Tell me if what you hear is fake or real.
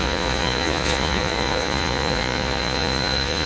fake